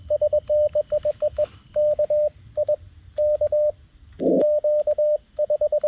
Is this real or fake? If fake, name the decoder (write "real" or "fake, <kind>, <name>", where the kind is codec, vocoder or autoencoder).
real